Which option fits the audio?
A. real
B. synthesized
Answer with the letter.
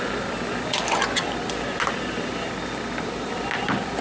A